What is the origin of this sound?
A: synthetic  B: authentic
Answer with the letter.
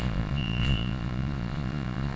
A